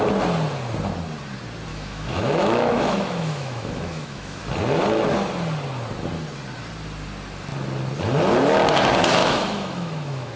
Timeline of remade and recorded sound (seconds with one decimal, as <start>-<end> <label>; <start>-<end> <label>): 0.0-1.7 recorded; 1.7-4.4 remade; 4.4-9.2 recorded; 9.2-10.4 remade